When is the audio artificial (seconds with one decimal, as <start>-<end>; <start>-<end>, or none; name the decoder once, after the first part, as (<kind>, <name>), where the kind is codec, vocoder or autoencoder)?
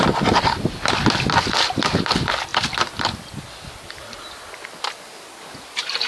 none